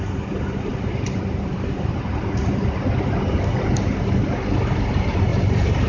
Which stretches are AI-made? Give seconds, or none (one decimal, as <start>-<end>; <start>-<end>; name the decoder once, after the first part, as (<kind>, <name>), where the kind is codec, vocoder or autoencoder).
0.7-2.2 (vocoder, BigVGAN v2); 5.3-5.9